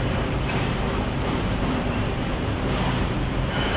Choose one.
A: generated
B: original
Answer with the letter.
A